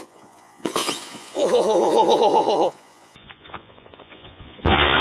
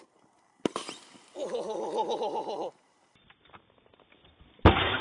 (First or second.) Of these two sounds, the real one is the second